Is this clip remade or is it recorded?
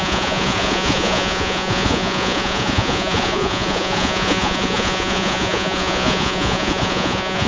remade